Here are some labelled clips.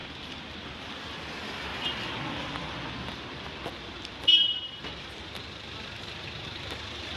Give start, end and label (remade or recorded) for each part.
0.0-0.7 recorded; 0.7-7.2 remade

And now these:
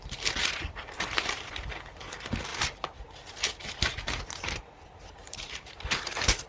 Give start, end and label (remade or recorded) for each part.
0.0-0.4 recorded; 0.4-1.5 remade; 1.5-2.5 recorded; 2.5-6.5 remade

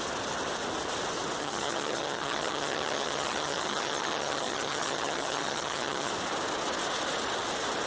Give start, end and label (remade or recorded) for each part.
0.0-1.4 recorded; 1.4-6.1 remade; 6.1-7.9 recorded

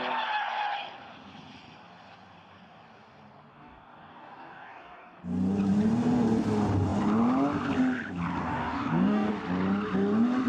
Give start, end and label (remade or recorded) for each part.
0.0-3.5 recorded; 3.5-5.2 remade; 5.2-8.4 recorded; 8.4-9.3 remade; 9.3-10.5 recorded

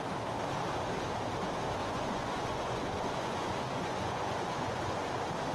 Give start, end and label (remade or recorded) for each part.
0.0-1.8 recorded; 1.8-5.1 remade; 5.1-5.5 recorded

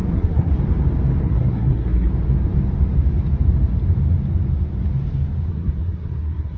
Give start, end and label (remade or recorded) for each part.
0.0-0.6 remade; 0.6-1.2 recorded; 1.2-2.1 remade; 2.1-5.5 recorded; 5.5-6.6 remade

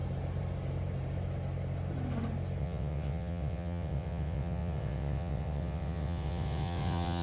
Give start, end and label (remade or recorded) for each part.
0.0-2.6 recorded; 2.6-7.2 remade